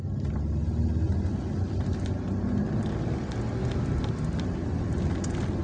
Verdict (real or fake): real